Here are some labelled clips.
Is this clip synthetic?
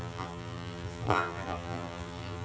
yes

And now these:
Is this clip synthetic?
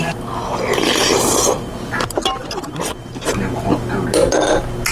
no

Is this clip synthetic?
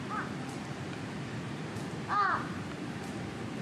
yes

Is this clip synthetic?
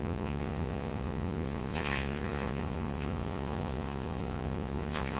yes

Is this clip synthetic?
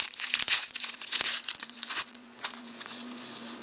yes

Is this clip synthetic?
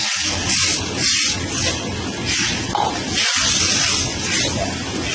no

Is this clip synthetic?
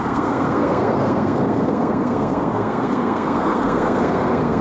yes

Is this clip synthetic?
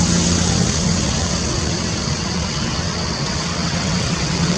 yes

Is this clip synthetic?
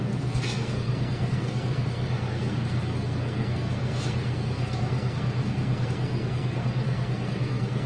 yes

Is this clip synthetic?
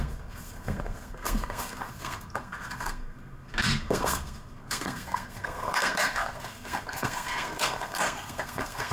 yes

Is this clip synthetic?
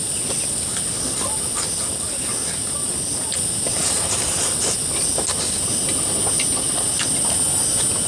no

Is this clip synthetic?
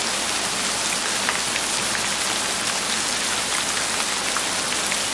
no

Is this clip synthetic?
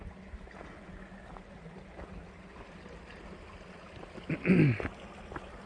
no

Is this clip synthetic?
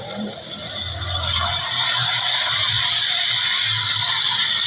yes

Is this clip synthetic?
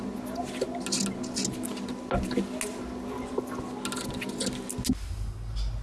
no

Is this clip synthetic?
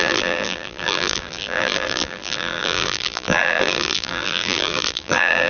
yes